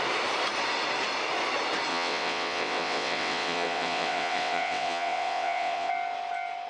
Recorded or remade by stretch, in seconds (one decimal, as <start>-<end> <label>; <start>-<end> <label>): 0.0-1.9 recorded; 1.9-5.9 remade; 5.9-6.7 recorded